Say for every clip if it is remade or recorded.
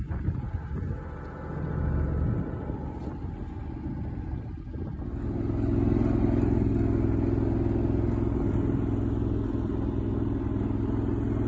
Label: recorded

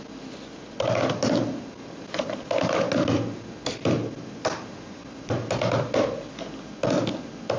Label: recorded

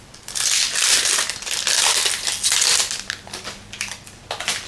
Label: recorded